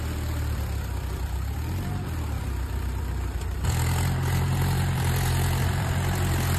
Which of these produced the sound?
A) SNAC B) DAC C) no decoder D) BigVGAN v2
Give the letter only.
D